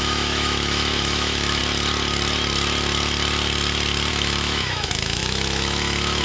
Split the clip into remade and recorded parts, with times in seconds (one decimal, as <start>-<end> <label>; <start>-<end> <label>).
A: 0.0-1.6 remade; 1.6-4.1 recorded; 4.1-6.2 remade